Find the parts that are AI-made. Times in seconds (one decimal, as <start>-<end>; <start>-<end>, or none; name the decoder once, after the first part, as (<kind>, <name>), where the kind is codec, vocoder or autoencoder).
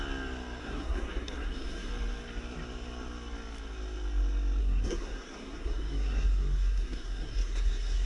0.6-1.9 (codec, SNAC); 4.6-8.1